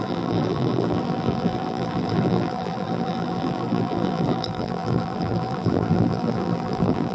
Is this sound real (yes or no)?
no